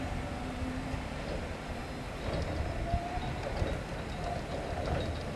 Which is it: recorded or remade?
recorded